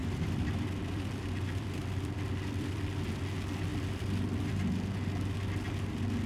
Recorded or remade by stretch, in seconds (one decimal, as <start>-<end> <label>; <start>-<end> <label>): 0.0-3.2 remade; 3.2-3.7 recorded; 3.7-4.8 remade; 4.8-6.3 recorded